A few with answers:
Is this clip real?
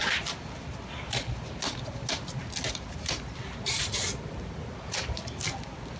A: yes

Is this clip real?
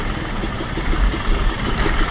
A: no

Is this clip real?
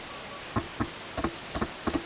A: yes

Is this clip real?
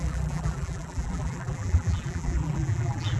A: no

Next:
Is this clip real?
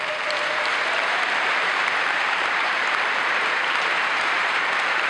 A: no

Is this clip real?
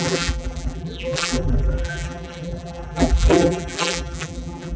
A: no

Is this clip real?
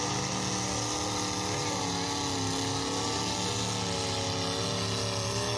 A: yes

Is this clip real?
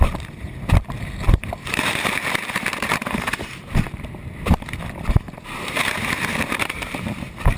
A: no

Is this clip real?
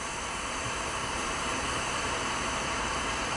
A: no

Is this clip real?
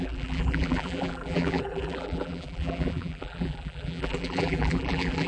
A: no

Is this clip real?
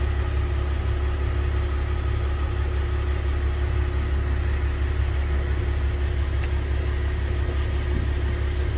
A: yes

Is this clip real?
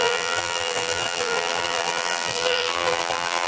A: no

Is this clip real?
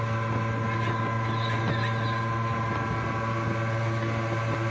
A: yes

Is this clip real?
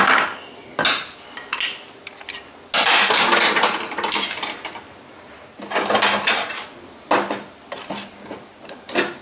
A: yes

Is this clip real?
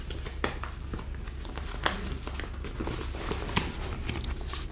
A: yes